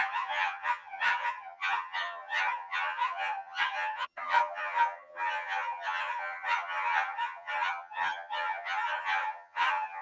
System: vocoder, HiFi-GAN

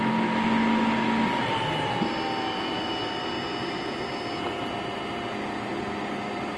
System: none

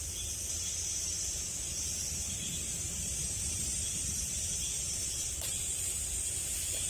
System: vocoder, BigVGAN v2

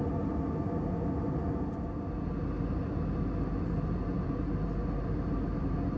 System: none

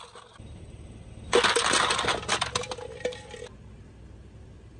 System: none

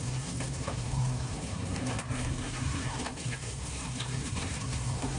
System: codec, SNAC